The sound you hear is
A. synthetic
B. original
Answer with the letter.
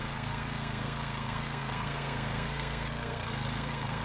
A